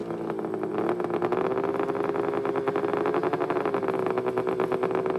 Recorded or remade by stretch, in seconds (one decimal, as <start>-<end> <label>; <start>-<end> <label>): 0.0-5.2 recorded